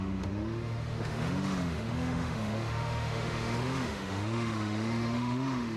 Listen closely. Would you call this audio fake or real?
fake